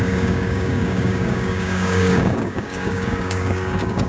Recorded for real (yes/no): no